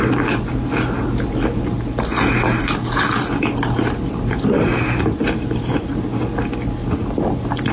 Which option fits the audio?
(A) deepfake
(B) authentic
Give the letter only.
B